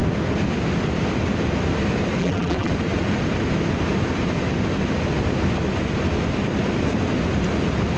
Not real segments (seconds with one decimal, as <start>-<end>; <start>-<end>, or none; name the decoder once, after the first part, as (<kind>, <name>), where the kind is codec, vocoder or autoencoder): 2.2-2.7 (vocoder, BigVGAN v2)